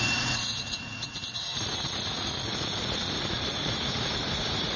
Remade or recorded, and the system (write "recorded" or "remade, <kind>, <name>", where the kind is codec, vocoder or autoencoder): remade, vocoder, Vocos